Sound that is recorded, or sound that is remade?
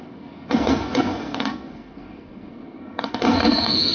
remade